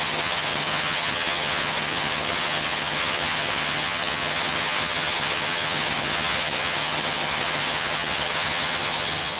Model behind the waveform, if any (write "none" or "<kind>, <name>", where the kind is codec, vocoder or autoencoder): vocoder, HiFi-GAN